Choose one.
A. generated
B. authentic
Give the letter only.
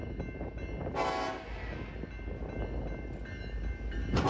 B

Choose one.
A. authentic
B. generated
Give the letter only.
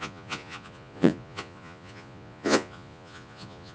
B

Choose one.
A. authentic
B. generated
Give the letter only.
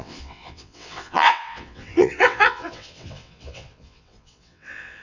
B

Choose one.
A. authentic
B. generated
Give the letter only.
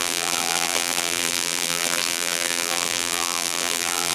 B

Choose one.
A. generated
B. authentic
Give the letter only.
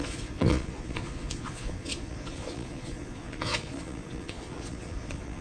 A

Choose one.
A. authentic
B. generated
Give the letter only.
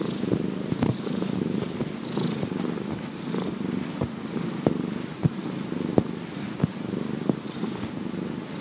A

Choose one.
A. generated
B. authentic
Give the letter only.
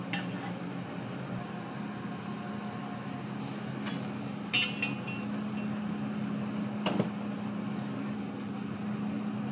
B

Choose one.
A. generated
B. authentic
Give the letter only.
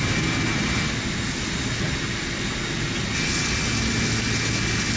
B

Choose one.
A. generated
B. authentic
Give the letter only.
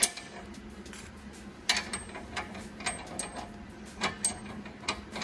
B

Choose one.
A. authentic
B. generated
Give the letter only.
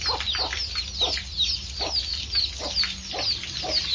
A